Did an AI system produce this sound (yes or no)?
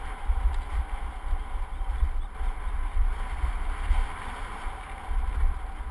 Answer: no